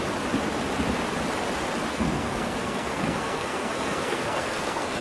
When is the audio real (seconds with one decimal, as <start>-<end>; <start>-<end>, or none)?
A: 0.0-1.9